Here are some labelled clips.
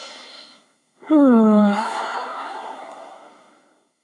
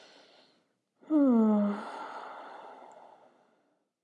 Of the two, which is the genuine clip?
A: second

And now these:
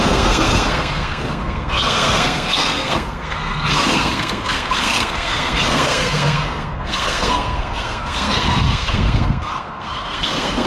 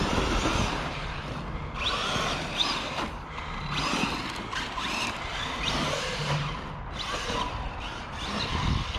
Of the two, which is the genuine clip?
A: second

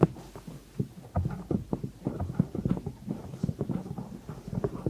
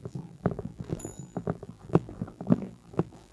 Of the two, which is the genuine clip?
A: first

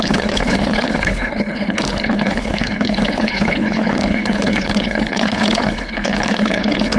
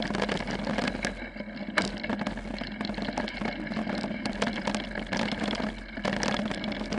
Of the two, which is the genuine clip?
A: second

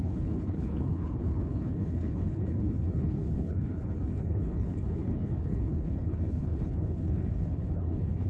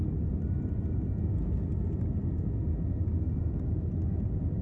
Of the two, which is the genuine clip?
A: second